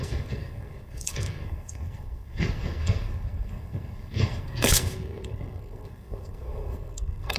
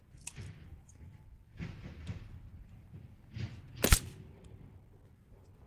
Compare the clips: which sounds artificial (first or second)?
first